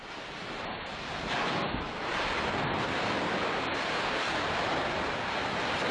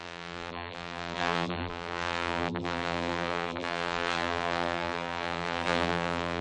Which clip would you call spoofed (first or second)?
second